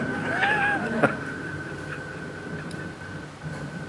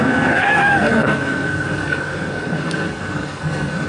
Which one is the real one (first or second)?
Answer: first